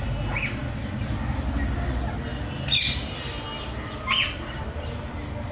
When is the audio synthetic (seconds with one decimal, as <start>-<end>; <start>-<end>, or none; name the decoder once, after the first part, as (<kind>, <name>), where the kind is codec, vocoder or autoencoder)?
none